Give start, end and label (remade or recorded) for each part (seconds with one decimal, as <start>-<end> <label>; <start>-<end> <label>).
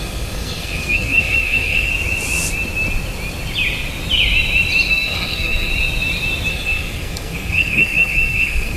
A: 0.0-1.9 remade; 1.9-4.9 recorded; 4.9-5.7 remade; 5.7-6.5 recorded; 6.5-8.8 remade